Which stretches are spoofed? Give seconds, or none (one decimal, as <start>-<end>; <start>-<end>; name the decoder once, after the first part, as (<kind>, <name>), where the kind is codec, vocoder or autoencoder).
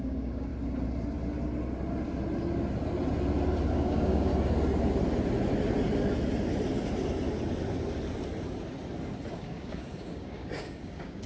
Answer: 0.0-0.5 (codec, DAC); 3.7-4.3; 9.3-11.3